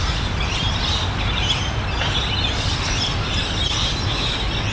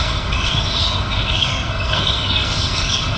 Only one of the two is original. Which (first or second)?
first